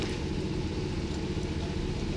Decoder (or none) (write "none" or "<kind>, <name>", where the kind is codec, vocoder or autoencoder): none